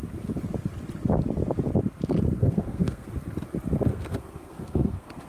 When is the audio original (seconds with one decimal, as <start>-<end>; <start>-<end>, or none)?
0.0-2.4; 3.1-3.9